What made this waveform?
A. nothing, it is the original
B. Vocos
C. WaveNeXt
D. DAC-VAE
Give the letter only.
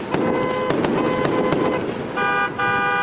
A